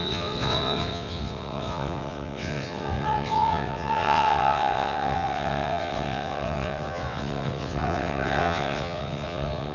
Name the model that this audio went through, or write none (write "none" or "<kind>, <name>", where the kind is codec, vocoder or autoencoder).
vocoder, WaveNeXt